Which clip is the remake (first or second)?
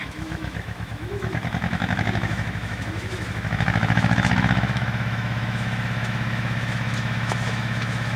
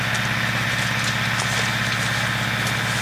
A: first